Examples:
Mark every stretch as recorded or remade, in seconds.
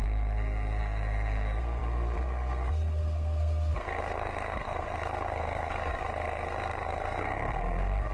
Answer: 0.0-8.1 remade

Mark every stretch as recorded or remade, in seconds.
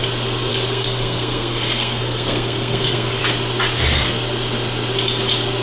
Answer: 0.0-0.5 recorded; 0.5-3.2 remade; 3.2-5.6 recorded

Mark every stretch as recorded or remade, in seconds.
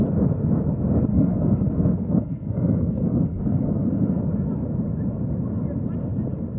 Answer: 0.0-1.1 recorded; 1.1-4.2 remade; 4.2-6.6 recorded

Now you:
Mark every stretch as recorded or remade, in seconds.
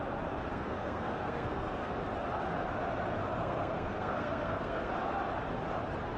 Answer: 0.0-0.5 recorded; 0.5-1.9 remade; 1.9-3.4 recorded; 3.4-4.9 remade; 4.9-6.2 recorded